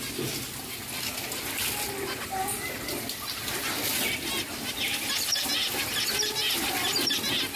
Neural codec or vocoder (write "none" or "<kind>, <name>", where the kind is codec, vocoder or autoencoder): none